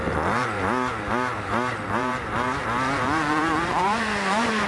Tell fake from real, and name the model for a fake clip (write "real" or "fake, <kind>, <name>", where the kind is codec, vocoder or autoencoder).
fake, vocoder, BigVGAN v2